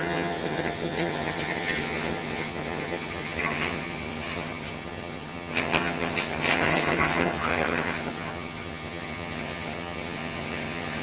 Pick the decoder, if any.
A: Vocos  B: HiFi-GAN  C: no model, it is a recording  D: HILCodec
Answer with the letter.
B